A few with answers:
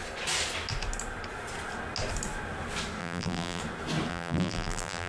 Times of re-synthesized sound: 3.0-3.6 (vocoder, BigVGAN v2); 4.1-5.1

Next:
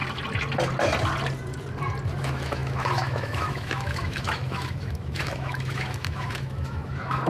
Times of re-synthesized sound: 2.2-7.3 (autoencoder, DAC-VAE)

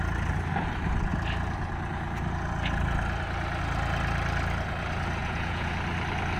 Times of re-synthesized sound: 5.2-5.7 (vocoder, Vocos)

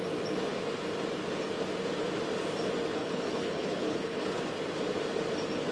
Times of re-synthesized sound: 3.0-4.4 (codec, HILCodec)